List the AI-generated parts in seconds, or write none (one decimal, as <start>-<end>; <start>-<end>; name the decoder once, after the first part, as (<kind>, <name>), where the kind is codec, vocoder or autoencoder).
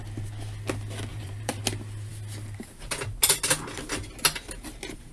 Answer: 1.1-1.6 (vocoder, BigVGAN v2)